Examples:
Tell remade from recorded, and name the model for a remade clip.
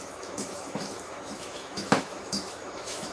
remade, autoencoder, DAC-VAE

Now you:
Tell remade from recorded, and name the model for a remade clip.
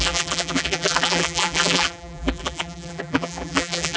remade, vocoder, BigVGAN v2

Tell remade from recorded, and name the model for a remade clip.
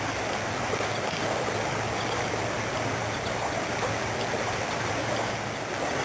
recorded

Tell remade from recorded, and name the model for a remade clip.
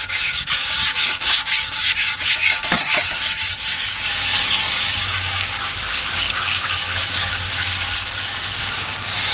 remade, codec, DAC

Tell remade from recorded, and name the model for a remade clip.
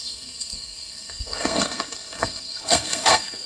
remade, codec, SNAC